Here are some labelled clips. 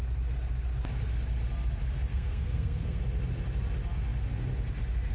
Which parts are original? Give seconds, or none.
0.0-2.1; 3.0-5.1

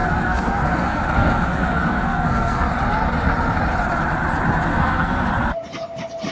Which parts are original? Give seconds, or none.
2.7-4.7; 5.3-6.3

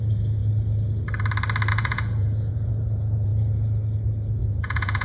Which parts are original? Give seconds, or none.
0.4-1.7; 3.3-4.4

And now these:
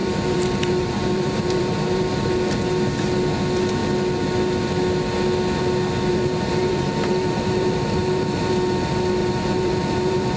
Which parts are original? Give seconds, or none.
2.3-6.1; 8.5-9.2

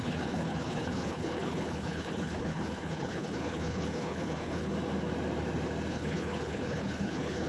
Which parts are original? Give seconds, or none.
4.7-5.9

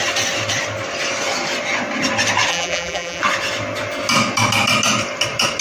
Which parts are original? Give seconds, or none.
0.0-2.5; 3.2-5.6

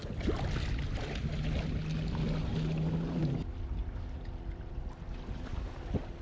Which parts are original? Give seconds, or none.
0.0-6.2

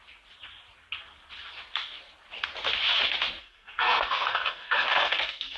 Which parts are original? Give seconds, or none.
0.0-3.4